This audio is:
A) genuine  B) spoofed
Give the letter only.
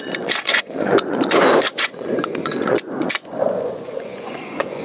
B